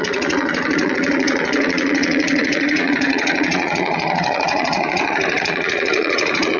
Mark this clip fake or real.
fake